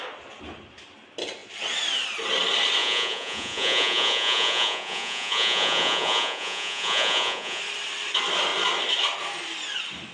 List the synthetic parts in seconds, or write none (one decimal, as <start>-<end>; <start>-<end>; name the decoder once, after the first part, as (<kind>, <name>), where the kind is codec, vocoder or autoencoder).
2.8-7.6 (vocoder, Vocos)